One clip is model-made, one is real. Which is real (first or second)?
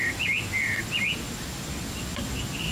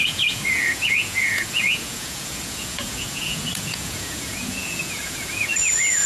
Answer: first